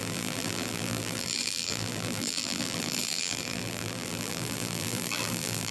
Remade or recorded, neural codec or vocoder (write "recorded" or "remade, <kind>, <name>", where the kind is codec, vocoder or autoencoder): remade, vocoder, BigVGAN v2